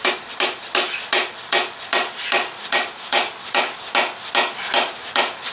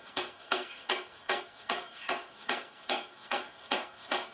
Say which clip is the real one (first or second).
first